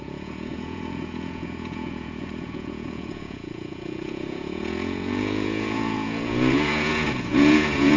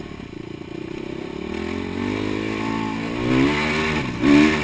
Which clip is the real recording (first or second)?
second